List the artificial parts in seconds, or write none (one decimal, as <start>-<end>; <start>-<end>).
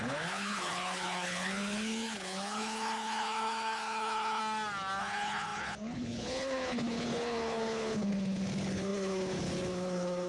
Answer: 0.0-4.4; 5.0-10.3